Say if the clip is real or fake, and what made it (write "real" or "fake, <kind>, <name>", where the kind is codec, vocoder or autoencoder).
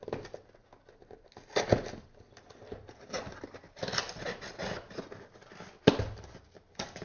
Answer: real